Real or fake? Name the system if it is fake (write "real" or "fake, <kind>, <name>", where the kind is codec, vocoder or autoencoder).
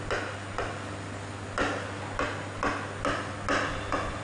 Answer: real